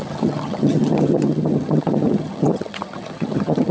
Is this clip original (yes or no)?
no